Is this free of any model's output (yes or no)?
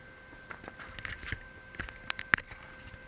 yes